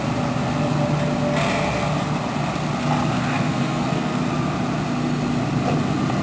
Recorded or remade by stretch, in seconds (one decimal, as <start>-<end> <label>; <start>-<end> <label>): 0.0-3.3 recorded; 3.3-4.2 remade; 4.2-6.2 recorded